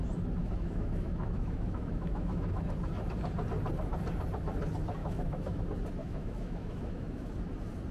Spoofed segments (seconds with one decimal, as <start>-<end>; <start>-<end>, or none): 0.4-2.6; 5.0-5.6; 6.0-7.3